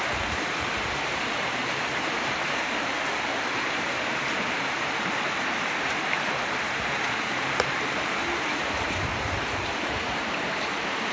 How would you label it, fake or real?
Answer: fake